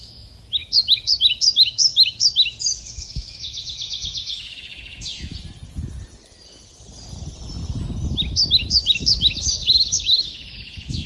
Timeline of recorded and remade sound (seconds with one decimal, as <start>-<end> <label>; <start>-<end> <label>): 0.0-5.3 remade; 5.3-8.5 recorded; 8.5-11.1 remade